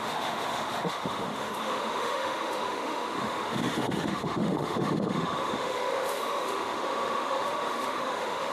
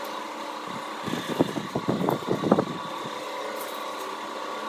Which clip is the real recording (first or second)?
second